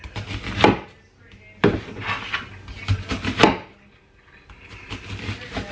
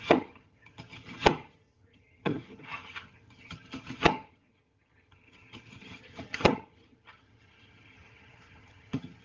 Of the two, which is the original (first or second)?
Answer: first